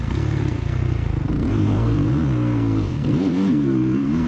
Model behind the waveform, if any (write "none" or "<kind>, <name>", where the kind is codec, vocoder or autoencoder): codec, SNAC